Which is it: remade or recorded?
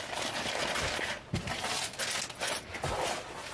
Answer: recorded